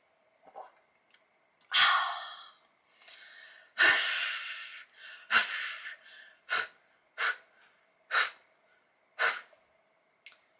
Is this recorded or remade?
recorded